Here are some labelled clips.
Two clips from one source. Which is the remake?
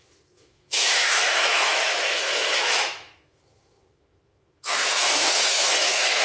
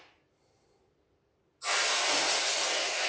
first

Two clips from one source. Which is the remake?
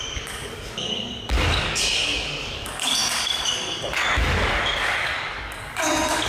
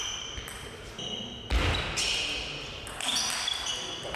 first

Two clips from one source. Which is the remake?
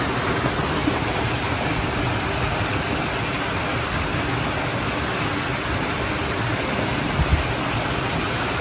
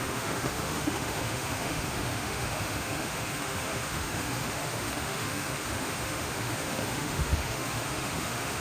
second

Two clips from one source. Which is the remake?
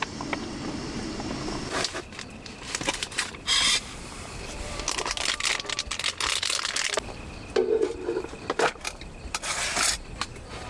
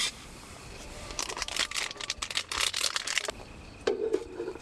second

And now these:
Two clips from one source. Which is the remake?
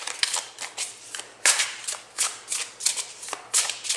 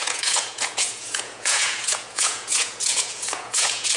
second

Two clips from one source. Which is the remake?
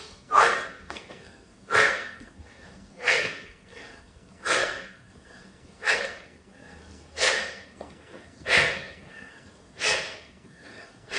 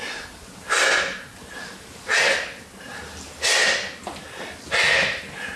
first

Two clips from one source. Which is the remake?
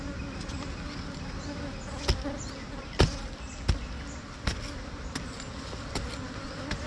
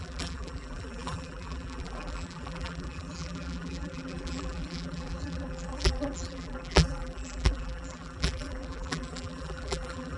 second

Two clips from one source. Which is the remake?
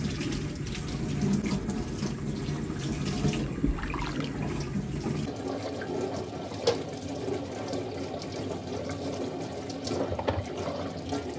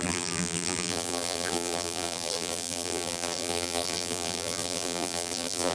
second